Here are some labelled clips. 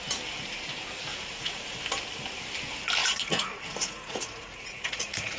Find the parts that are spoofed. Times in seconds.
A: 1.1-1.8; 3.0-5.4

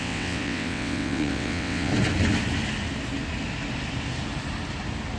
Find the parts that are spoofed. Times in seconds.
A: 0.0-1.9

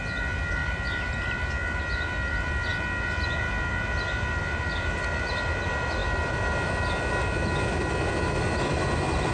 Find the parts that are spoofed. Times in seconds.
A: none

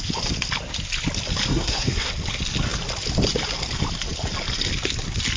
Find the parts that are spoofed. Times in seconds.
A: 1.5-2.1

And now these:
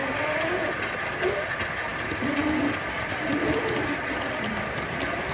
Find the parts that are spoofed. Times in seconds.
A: 0.0-1.5; 1.9-5.3

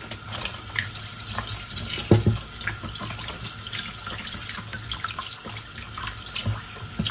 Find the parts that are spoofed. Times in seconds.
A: none